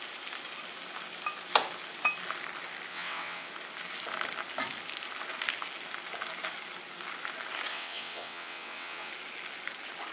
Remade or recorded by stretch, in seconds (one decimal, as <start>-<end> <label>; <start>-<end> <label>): 0.0-2.9 recorded; 2.9-3.5 remade; 3.5-7.7 recorded; 7.7-9.1 remade; 9.1-10.1 recorded